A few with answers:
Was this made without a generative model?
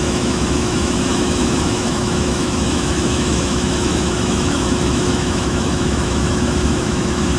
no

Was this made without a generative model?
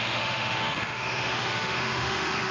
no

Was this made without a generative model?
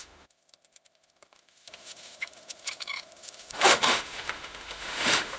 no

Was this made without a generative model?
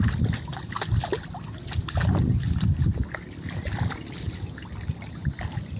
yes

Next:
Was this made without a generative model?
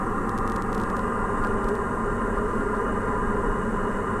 yes